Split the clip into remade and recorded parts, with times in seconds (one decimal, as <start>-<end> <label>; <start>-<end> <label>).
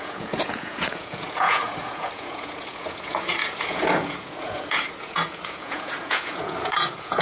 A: 0.0-7.2 remade